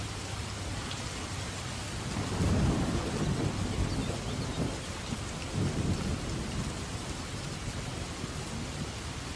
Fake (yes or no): no